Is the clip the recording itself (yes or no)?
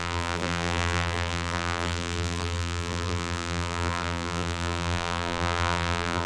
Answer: no